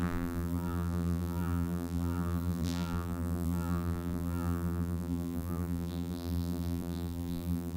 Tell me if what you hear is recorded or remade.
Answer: remade